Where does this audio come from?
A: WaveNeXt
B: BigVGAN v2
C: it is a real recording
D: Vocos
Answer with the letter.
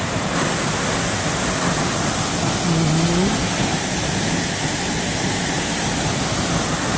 C